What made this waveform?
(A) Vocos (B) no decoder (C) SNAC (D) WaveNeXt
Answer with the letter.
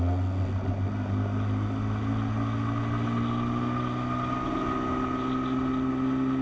B